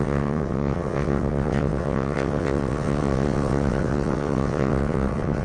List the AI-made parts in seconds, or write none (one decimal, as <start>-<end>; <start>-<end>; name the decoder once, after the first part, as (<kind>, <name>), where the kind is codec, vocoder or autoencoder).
0.0-5.4 (vocoder, WaveNeXt)